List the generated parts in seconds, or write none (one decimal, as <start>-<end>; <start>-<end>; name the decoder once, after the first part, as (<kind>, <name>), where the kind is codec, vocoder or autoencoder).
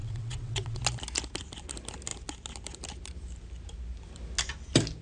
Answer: 0.0-0.8 (vocoder, WaveNeXt)